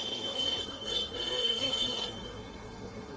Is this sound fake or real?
fake